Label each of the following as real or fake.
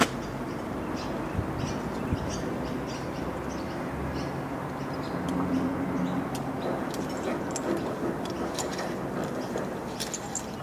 real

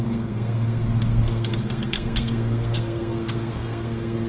fake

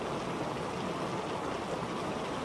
real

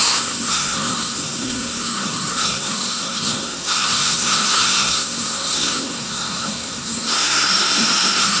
fake